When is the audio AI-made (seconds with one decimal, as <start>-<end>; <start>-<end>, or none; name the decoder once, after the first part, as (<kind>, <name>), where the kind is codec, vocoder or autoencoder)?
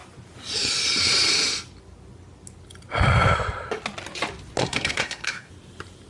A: 4.6-5.5 (codec, SNAC)